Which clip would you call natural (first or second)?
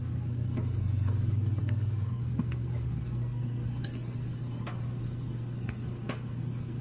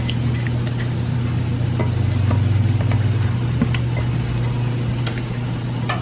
second